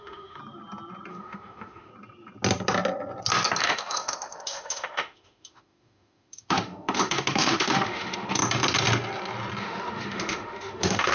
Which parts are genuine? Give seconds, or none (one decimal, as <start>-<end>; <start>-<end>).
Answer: 0.4-1.1; 1.9-3.6; 8.4-9.6